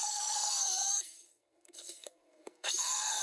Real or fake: fake